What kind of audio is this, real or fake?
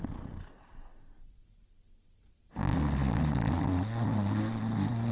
real